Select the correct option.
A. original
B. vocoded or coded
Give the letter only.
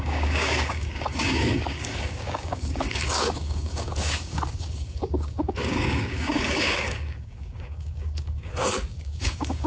B